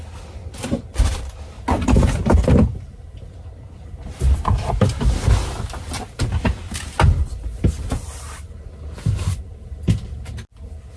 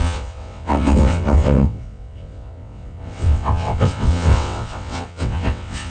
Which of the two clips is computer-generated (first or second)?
second